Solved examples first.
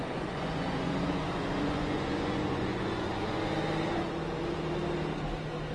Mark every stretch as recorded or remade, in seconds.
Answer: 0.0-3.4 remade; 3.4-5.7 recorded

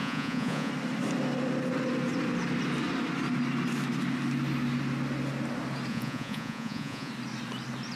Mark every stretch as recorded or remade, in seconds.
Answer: 0.0-0.7 remade; 0.7-5.9 recorded; 5.9-7.1 remade; 7.1-8.0 recorded

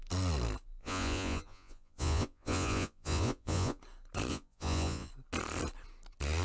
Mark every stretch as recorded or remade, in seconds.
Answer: 0.0-0.8 recorded; 0.8-3.8 remade; 3.8-4.3 recorded; 4.3-5.1 remade; 5.1-6.4 recorded

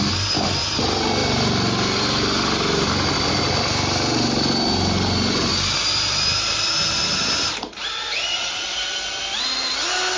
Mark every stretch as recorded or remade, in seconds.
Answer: 0.0-10.2 recorded